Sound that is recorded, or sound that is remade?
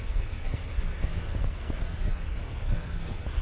remade